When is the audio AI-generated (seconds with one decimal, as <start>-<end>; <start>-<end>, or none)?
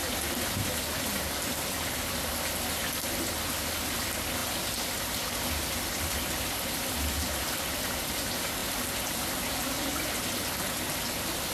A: none